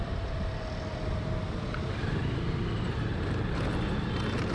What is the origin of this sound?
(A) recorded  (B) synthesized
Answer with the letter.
A